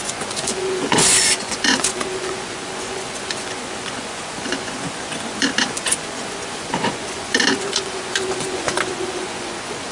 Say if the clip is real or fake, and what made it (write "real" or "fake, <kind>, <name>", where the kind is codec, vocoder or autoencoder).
fake, vocoder, Vocos